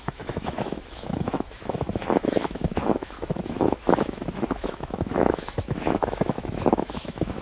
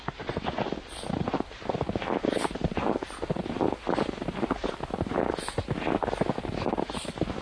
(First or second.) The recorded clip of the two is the second